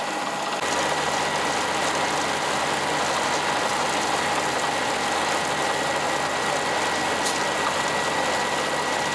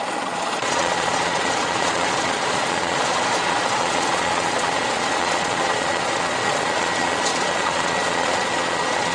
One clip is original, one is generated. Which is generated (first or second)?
second